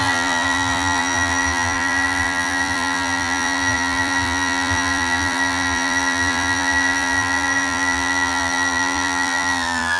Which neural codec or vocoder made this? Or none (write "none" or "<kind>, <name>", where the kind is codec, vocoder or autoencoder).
vocoder, BigVGAN v2